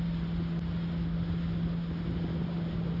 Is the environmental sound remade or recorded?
recorded